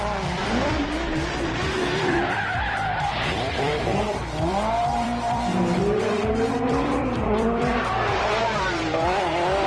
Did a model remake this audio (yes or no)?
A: yes